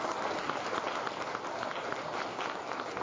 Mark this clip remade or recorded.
recorded